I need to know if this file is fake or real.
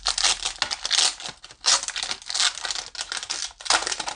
real